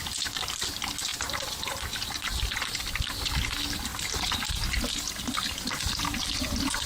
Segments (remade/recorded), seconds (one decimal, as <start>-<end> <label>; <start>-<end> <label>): 0.0-6.9 recorded